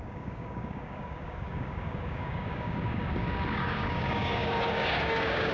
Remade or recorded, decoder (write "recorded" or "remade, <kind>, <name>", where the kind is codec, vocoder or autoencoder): remade, codec, DAC